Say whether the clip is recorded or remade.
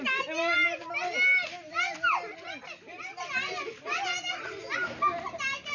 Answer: recorded